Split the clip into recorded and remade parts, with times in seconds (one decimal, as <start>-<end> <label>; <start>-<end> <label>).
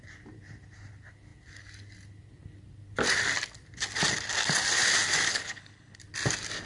0.0-5.3 recorded; 5.3-6.0 remade; 6.0-6.7 recorded